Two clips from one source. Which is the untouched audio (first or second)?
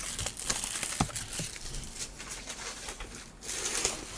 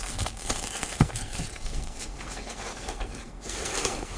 first